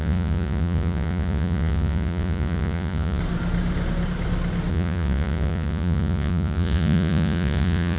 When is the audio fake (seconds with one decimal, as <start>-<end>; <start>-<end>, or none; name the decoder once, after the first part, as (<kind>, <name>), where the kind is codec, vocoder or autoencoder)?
0.0-3.2 (vocoder, Vocos); 4.7-8.0